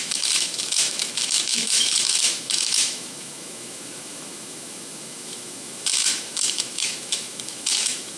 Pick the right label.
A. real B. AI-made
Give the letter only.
B